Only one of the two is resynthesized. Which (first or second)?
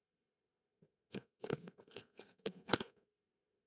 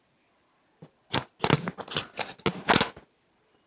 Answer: first